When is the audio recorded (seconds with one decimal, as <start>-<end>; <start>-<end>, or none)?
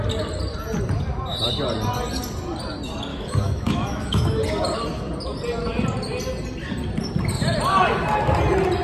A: 0.0-3.1; 4.4-8.8